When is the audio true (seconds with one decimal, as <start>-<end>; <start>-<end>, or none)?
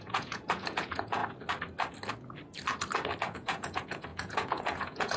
1.2-3.2